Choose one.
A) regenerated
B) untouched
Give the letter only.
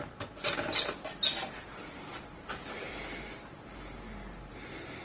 B